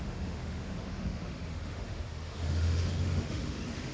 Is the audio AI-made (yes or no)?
yes